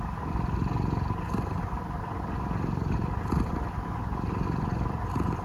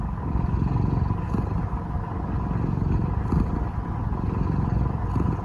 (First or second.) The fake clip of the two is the first